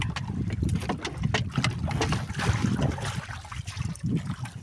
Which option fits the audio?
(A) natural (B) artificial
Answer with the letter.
A